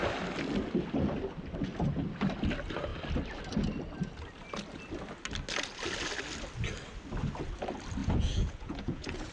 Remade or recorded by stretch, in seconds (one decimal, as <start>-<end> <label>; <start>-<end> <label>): 0.0-8.0 recorded; 8.0-9.3 remade